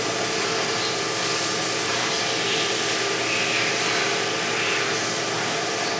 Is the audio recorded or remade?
recorded